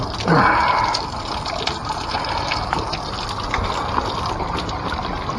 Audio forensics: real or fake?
real